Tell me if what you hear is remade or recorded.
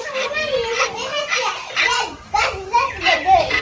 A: recorded